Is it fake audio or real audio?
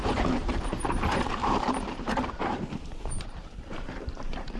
fake